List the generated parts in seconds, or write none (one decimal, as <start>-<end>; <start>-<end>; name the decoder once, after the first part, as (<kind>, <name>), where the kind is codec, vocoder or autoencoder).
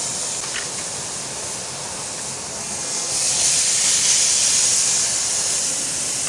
2.6-3.3 (codec, SNAC)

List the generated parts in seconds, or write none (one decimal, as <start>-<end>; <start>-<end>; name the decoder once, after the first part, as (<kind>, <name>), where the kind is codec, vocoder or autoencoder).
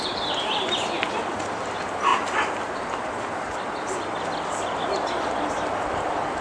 0.0-2.1 (vocoder, BigVGAN v2); 5.9-6.4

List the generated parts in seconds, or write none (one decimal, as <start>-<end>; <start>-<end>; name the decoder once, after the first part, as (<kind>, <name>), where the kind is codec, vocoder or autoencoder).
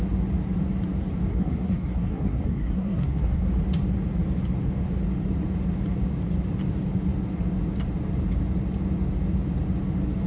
1.3-3.5 (codec, SNAC)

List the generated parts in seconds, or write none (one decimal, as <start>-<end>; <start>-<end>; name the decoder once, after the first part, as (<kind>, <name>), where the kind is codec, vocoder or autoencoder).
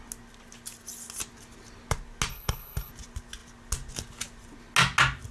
2.3-2.9 (codec, HILCodec)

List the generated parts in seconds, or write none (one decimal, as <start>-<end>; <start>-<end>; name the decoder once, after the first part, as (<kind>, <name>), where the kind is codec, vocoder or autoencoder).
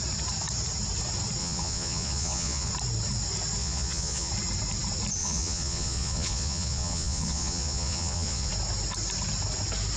1.4-2.7 (vocoder, Vocos); 3.6-4.3; 5.2-8.5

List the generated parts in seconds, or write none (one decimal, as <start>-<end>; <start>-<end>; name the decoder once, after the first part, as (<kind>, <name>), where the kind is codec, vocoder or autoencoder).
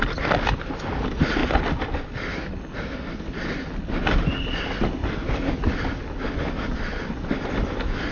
none